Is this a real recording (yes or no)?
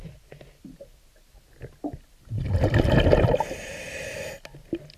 yes